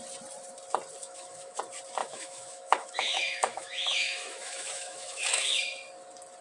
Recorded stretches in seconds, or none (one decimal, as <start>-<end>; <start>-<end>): 0.0-1.0; 1.6-2.0; 5.6-6.4